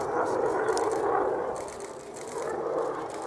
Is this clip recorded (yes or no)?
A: yes